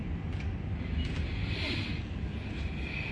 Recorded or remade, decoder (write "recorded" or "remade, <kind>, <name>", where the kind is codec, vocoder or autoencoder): recorded